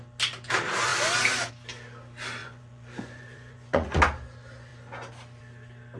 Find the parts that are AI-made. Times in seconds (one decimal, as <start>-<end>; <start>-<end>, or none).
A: 2.4-4.0